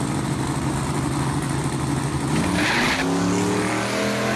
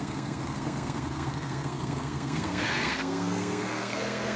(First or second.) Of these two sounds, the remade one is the second